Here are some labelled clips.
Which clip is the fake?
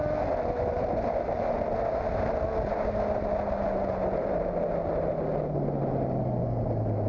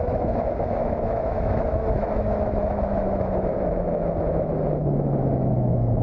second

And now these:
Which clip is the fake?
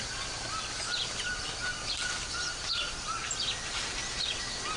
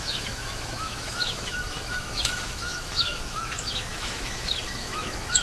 second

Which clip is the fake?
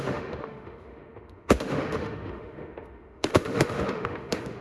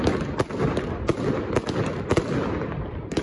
first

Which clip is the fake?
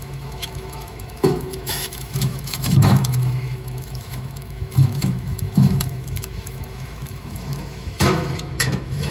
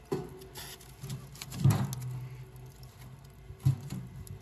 first